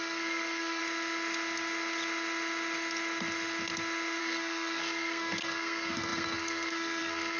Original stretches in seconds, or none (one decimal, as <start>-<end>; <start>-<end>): 0.8-4.2